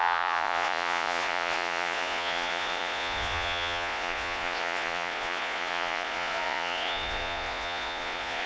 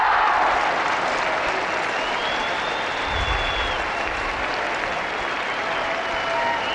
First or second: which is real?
second